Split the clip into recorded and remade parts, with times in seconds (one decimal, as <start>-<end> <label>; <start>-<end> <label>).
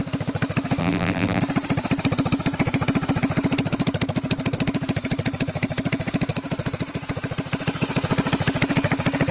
0.0-0.8 recorded; 0.8-1.4 remade; 1.4-9.3 recorded